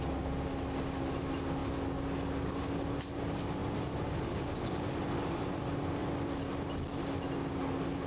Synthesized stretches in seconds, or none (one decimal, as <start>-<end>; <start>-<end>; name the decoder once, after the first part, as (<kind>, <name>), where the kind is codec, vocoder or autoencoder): none

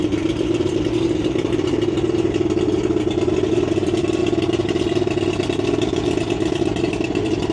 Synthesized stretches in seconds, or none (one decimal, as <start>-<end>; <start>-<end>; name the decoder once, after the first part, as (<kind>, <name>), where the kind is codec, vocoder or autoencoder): 0.0-7.5 (vocoder, BigVGAN v2)

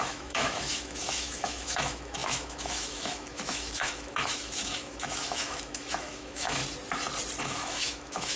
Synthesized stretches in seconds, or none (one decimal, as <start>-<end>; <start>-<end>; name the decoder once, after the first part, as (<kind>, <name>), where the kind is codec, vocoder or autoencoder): 0.0-6.6 (autoencoder, DAC-VAE); 7.4-8.4

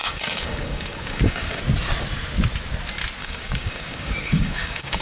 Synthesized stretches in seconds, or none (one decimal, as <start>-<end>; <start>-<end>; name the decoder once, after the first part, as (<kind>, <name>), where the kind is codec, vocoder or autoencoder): 0.0-1.6 (codec, DAC); 3.2-5.0

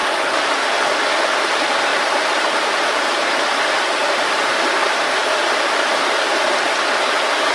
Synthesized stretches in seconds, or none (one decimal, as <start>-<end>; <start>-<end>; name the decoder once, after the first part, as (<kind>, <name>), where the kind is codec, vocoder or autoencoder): 1.9-3.5 (vocoder, BigVGAN v2); 4.0-6.1